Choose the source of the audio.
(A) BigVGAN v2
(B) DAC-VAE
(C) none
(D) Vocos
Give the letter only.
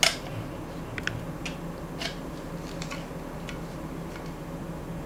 C